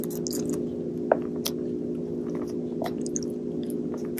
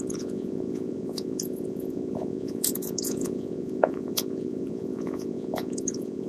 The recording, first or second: first